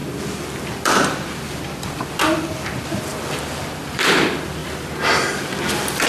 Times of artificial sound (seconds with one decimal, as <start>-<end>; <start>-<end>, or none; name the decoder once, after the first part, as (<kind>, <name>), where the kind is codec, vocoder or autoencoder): 0.0-4.6 (vocoder, BigVGAN v2); 5.3-6.1